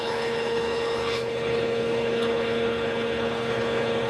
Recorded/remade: remade